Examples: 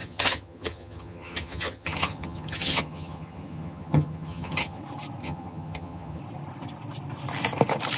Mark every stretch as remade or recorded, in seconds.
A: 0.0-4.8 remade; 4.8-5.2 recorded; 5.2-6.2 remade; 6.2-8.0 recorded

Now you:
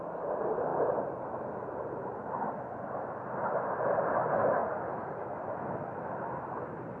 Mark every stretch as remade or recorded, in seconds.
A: 0.0-7.0 recorded

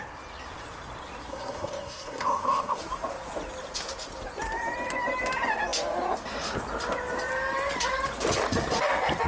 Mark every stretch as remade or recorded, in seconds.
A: 0.0-1.3 recorded; 1.3-2.8 remade; 2.8-9.3 recorded

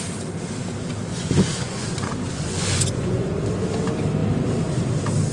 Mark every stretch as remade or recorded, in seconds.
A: 0.0-1.1 recorded; 1.1-3.3 remade; 3.3-5.3 recorded

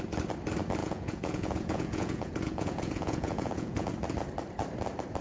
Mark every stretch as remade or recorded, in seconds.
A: 0.0-0.8 recorded; 0.8-3.9 remade; 3.9-5.2 recorded

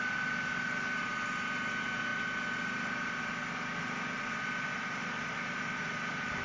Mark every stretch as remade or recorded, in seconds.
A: 0.0-6.4 recorded

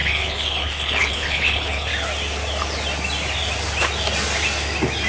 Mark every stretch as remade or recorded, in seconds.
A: 0.0-1.9 remade; 1.9-5.1 recorded

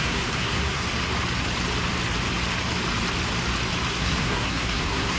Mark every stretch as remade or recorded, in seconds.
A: 0.0-0.8 remade; 0.8-3.9 recorded; 3.9-5.2 remade